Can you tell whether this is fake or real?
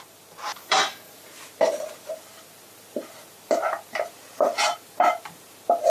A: fake